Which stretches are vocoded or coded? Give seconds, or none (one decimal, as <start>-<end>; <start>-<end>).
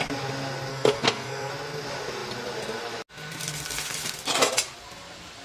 0.7-1.5